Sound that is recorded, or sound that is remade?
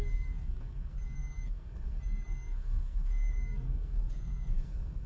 remade